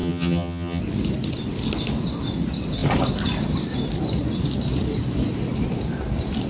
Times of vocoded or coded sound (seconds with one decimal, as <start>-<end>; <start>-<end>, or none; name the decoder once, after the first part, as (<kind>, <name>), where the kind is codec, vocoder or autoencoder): 0.0-0.8 (vocoder, HiFi-GAN)